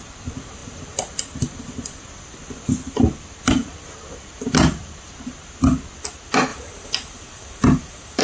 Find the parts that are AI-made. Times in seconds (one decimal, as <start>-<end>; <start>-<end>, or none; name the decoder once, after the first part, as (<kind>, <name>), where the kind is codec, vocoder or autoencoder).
6.5-8.2 (vocoder, BigVGAN v2)